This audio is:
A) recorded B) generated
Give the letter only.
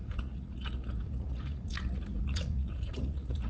B